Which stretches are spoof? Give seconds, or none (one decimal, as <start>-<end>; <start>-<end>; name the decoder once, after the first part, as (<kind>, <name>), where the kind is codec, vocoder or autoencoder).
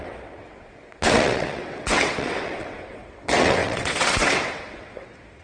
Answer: 0.0-5.4 (vocoder, WaveNeXt)